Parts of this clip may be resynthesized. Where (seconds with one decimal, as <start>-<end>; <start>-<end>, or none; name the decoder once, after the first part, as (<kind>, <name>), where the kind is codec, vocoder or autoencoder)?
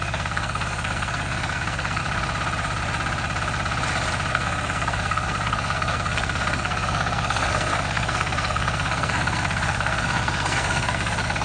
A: 0.0-2.0 (codec, SNAC); 4.3-11.4